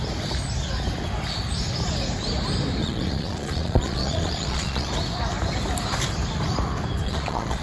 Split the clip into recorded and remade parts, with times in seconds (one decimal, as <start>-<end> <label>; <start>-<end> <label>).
0.0-2.8 recorded; 2.8-4.9 remade; 4.9-7.0 recorded; 7.0-7.6 remade